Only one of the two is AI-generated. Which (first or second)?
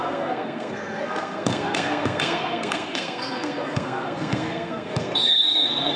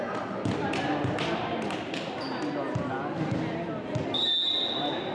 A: first